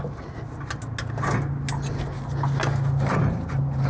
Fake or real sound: real